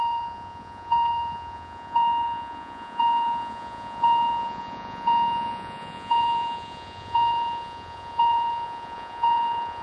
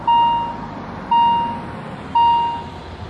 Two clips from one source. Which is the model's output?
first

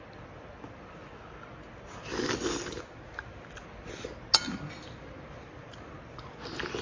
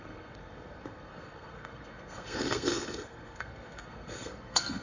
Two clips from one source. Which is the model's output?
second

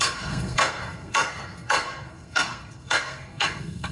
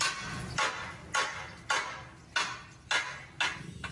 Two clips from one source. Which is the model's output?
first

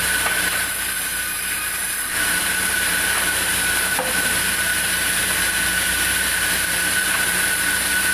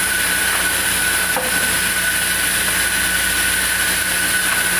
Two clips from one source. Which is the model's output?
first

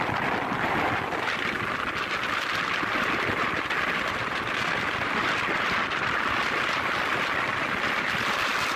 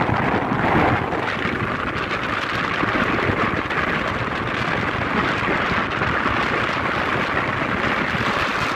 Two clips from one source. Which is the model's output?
first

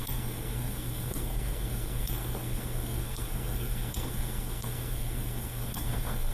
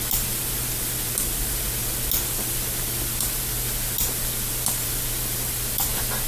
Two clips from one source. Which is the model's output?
first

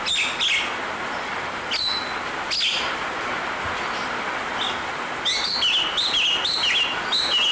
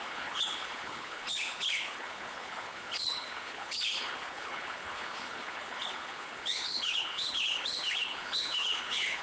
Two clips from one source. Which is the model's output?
second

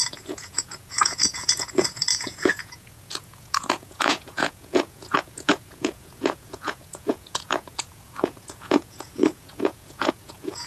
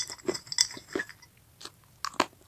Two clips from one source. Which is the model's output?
first